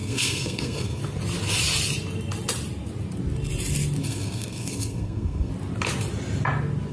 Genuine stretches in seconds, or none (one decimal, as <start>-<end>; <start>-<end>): 1.0-4.0; 5.5-6.9